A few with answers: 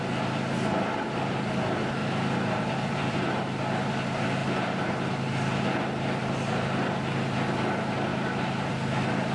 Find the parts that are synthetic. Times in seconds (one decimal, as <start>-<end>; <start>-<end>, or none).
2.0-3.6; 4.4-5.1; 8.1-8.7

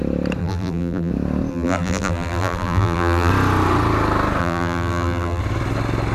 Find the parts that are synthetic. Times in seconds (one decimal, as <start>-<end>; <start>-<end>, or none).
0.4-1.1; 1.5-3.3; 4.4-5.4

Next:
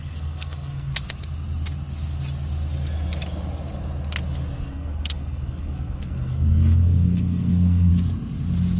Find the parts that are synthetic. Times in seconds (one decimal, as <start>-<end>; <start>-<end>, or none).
0.0-0.9; 4.7-7.9